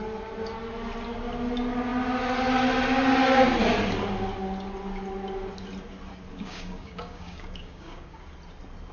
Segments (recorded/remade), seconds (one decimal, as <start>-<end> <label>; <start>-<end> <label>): 0.0-6.3 recorded; 6.3-8.2 remade; 8.2-8.9 recorded